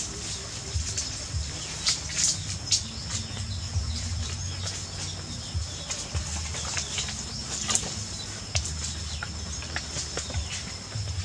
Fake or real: real